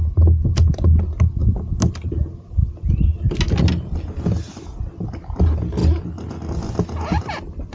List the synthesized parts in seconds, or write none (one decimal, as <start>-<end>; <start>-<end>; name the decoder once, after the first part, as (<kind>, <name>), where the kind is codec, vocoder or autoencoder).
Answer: none